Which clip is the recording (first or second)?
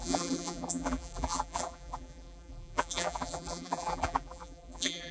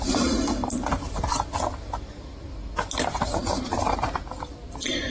second